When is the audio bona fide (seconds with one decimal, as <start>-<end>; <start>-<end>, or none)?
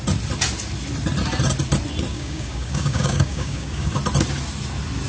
0.0-2.1; 3.9-5.1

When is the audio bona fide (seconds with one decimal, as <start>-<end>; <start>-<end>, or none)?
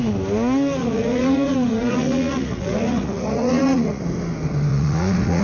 0.0-0.8; 4.0-4.7